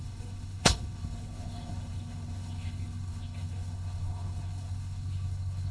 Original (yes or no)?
no